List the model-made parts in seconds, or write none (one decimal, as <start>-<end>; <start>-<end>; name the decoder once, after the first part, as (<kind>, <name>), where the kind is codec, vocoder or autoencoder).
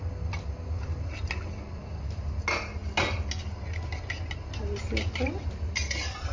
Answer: none